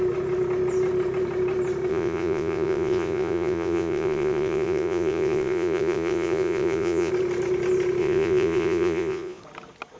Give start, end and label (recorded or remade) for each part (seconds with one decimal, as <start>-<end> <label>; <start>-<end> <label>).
0.0-1.9 recorded; 1.9-7.1 remade; 7.1-8.0 recorded; 8.0-9.4 remade; 9.4-10.0 recorded